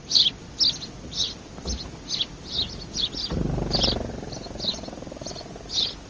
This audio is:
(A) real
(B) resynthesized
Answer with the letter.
A